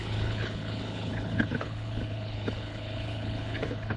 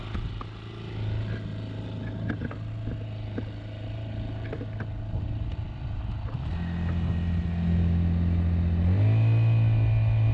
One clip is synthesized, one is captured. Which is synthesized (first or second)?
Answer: first